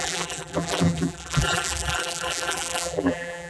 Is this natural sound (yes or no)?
no